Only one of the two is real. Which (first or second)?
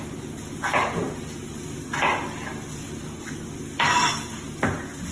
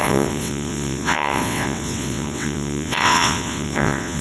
first